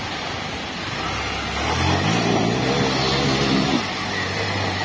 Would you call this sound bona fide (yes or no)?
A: yes